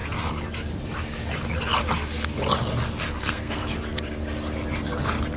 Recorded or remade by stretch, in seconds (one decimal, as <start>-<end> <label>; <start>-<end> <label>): 0.0-3.2 recorded; 3.2-3.6 remade; 3.6-5.4 recorded